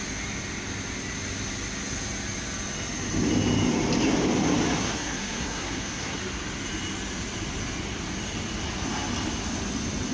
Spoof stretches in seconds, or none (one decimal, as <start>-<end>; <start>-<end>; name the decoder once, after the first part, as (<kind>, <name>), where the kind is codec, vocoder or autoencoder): 4.8-6.2 (codec, SNAC)